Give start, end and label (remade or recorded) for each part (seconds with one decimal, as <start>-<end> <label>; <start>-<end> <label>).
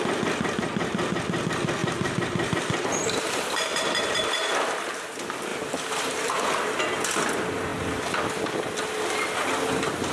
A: 0.0-1.8 recorded; 1.8-4.5 remade; 4.5-5.5 recorded; 5.5-6.3 remade; 6.3-10.1 recorded